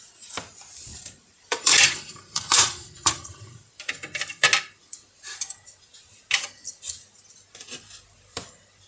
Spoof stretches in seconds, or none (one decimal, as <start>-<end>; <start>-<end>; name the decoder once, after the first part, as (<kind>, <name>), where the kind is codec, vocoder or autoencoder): 0.9-3.7 (vocoder, BigVGAN v2)